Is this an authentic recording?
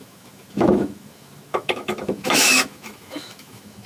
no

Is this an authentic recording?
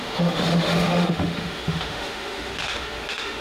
no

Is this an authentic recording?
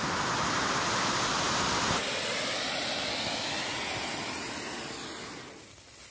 yes